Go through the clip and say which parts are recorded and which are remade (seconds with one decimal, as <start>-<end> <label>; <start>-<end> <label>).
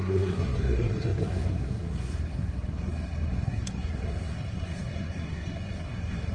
0.0-6.3 remade